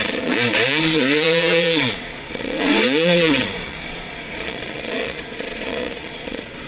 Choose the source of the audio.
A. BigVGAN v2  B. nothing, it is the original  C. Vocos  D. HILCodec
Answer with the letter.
C